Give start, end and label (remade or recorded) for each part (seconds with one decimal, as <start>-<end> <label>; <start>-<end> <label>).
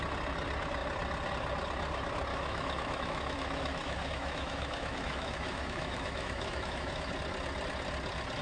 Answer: 0.0-2.3 recorded; 2.3-7.1 remade; 7.1-8.4 recorded